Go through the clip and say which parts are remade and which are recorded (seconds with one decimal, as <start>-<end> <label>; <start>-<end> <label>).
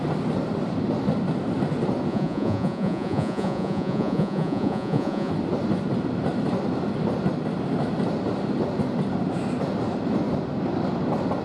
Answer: 0.0-2.1 recorded; 2.1-5.3 remade; 5.3-11.4 recorded